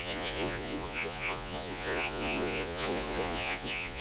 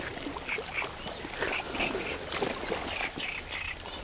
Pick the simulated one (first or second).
first